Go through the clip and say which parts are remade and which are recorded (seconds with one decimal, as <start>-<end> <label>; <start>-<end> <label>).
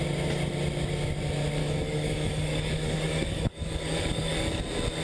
0.0-1.6 recorded; 1.6-4.6 remade; 4.6-5.0 recorded